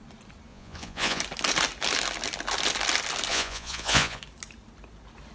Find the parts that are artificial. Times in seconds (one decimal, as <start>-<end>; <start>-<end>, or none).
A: 0.5-1.2; 3.3-4.2